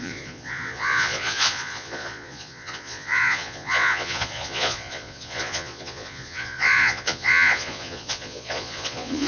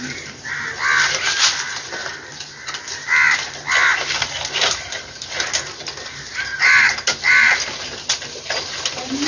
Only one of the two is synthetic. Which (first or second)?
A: first